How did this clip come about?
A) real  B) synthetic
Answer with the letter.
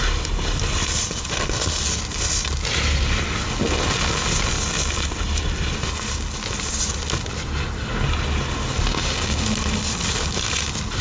A